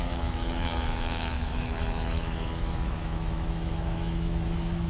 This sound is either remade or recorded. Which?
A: remade